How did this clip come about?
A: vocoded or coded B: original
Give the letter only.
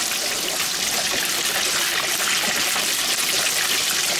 B